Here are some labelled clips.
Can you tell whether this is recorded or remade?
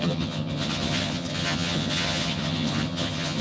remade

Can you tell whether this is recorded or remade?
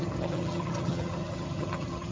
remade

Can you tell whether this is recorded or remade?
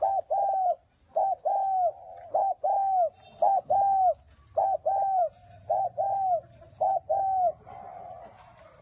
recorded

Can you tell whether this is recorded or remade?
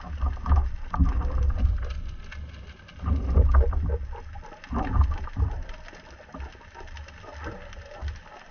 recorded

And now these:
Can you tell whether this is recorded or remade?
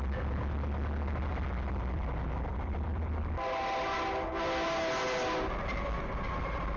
recorded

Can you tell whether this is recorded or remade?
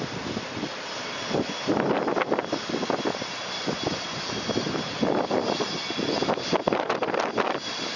recorded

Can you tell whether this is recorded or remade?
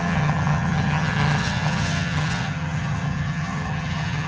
remade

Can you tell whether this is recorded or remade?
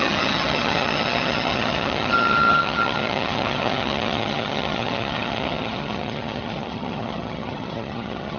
remade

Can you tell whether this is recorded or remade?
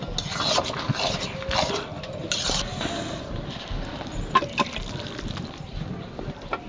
recorded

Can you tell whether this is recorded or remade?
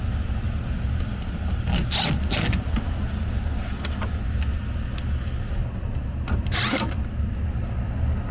recorded